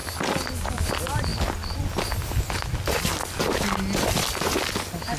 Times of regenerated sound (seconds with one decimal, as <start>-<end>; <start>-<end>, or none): none